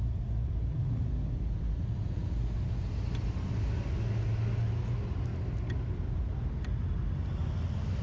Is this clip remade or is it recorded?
recorded